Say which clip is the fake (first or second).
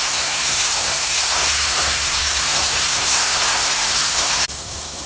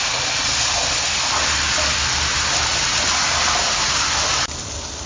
first